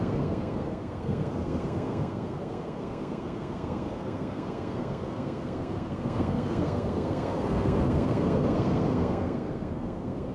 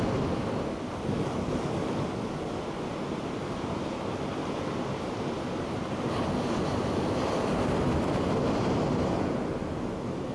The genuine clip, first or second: second